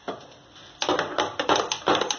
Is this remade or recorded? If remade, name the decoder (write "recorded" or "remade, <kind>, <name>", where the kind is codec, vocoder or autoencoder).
recorded